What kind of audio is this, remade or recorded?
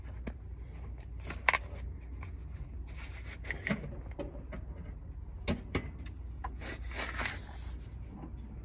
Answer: recorded